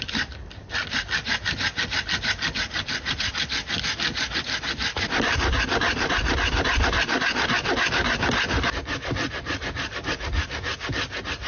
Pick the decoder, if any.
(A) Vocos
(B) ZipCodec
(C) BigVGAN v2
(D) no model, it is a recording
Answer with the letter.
D